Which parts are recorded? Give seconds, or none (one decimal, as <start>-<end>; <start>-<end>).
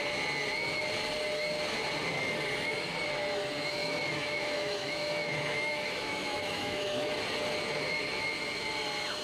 0.0-3.8; 7.1-9.2